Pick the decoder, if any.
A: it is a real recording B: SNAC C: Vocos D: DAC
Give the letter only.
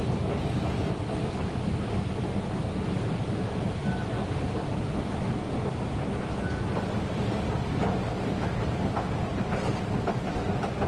A